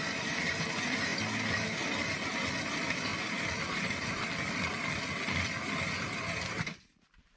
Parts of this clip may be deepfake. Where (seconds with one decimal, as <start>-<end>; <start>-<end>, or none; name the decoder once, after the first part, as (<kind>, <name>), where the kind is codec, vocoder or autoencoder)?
none